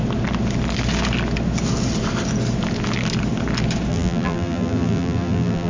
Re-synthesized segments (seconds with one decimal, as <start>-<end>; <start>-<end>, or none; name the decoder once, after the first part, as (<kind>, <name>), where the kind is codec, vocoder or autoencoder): 3.9-5.7 (vocoder, BigVGAN v2)